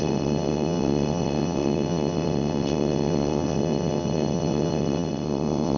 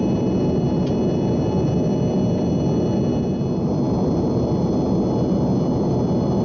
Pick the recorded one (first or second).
second